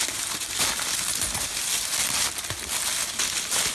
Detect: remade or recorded recorded